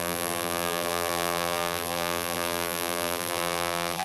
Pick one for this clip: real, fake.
fake